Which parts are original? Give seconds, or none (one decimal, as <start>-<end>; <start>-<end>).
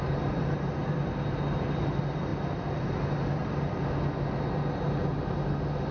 0.0-5.9